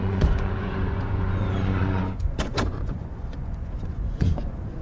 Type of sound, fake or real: fake